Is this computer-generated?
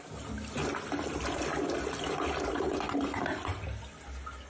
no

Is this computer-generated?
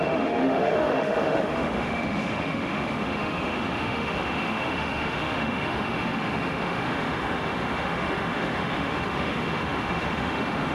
yes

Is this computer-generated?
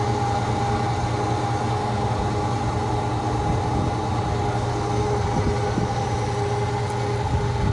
no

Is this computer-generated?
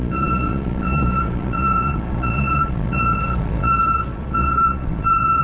yes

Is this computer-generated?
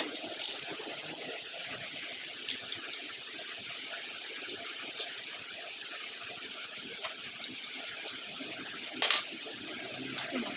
no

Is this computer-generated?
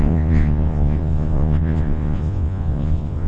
yes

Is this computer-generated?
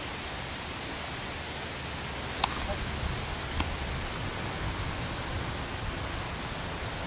no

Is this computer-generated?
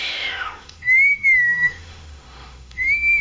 yes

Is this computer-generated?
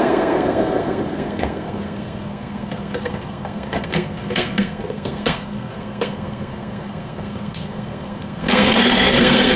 yes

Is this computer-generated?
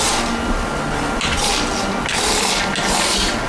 no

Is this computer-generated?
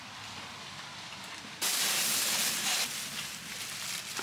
yes